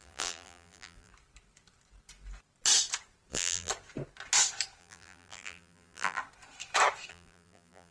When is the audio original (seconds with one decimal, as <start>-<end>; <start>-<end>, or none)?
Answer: 1.1-3.3; 3.7-4.8; 6.2-7.1